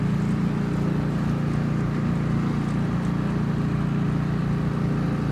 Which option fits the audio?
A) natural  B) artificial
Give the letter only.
A